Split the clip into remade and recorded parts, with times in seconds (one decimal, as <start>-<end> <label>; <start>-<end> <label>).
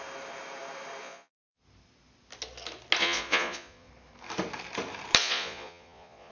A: 0.0-1.0 recorded; 1.0-1.6 remade; 1.6-3.0 recorded; 3.0-3.9 remade; 3.9-5.2 recorded; 5.2-6.3 remade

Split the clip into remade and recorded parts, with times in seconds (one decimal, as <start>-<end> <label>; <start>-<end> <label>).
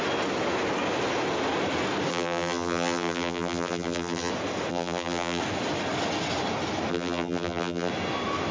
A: 0.0-2.1 recorded; 2.1-4.3 remade; 4.3-4.7 recorded; 4.7-5.4 remade; 5.4-6.9 recorded; 6.9-7.9 remade; 7.9-8.5 recorded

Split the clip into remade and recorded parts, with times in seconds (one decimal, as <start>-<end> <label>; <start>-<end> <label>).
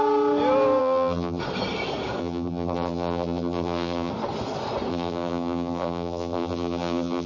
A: 0.0-0.8 recorded; 0.8-1.4 remade; 1.4-2.2 recorded; 2.2-4.1 remade; 4.1-4.9 recorded; 4.9-7.3 remade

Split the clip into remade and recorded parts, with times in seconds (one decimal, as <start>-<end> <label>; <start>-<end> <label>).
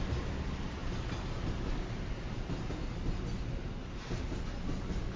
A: 0.0-5.2 recorded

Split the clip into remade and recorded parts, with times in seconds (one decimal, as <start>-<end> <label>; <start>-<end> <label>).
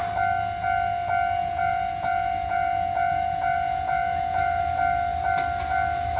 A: 0.0-1.4 recorded; 1.4-4.6 remade; 4.6-6.2 recorded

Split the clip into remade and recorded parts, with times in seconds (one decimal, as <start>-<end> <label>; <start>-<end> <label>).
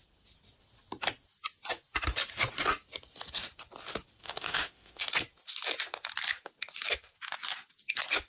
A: 0.0-4.2 recorded; 4.2-5.0 remade; 5.0-8.3 recorded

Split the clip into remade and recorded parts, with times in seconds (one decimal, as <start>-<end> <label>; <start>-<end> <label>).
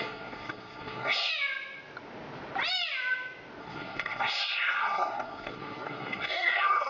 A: 0.0-1.3 remade; 1.3-3.6 recorded; 3.6-6.9 remade